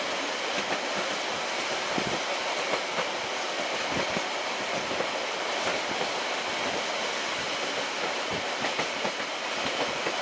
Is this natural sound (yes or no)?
yes